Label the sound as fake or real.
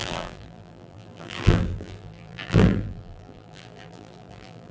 fake